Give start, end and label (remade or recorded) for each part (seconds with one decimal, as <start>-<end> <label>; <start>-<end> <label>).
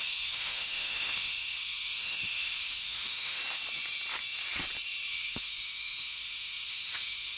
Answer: 0.0-3.4 remade; 3.4-5.1 recorded; 5.1-7.4 remade